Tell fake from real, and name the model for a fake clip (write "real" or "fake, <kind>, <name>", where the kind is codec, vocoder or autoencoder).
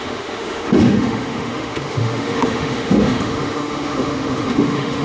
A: fake, autoencoder, DAC-VAE